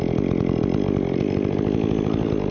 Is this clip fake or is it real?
real